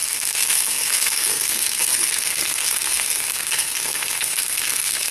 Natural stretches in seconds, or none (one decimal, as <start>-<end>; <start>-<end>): none